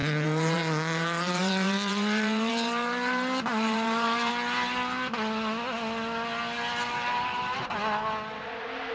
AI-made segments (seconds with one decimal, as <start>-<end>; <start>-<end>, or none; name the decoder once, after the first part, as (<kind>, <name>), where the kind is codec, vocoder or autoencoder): 0.0-4.3 (vocoder, BigVGAN v2); 6.7-7.7

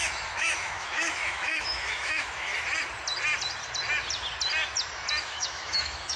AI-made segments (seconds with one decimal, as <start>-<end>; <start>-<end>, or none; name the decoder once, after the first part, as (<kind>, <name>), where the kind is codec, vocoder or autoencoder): 0.0-2.5 (autoencoder, DAC-VAE); 5.2-6.2

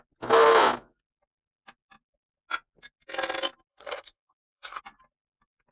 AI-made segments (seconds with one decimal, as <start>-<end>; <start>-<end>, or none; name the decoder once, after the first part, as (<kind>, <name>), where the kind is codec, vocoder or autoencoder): 3.7-4.8 (codec, SNAC)

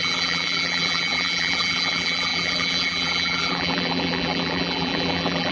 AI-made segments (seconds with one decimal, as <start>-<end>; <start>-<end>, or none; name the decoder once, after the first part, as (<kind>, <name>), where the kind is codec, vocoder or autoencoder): 0.0-5.5 (vocoder, BigVGAN v2)

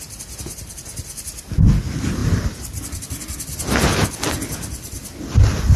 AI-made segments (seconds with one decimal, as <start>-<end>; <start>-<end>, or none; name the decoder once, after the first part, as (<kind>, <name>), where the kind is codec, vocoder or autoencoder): none

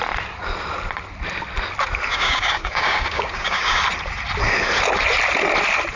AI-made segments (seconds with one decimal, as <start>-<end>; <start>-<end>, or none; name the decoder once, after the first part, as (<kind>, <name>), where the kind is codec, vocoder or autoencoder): 2.1-3.8 (codec, DAC)